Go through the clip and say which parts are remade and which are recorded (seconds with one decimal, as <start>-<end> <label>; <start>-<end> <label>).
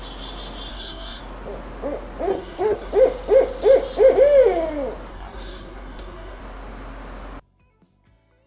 0.0-0.7 recorded; 0.7-1.2 remade; 1.2-2.3 recorded; 2.3-2.9 remade; 2.9-5.1 recorded; 5.1-6.4 remade; 6.4-8.5 recorded